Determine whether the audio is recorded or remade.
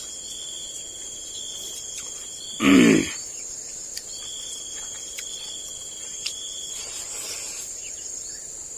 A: recorded